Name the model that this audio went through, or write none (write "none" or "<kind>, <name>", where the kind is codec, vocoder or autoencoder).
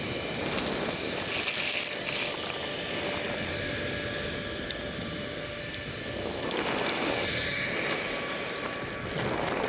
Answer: none